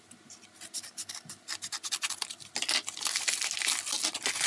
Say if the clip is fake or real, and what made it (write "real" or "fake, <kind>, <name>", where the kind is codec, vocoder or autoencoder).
real